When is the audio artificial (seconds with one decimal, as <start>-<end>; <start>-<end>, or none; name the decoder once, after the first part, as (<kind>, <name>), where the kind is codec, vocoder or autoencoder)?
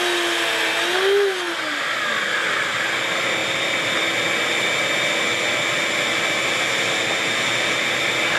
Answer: none